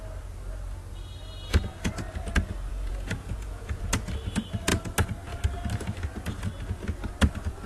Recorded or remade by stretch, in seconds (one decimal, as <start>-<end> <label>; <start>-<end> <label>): 0.0-2.7 recorded; 2.7-3.9 remade; 3.9-7.7 recorded